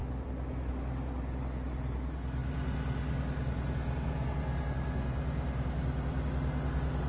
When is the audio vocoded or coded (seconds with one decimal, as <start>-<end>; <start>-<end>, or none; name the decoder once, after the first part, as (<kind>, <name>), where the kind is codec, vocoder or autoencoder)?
none